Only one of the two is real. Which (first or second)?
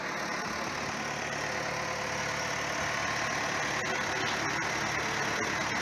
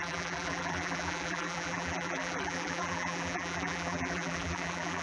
first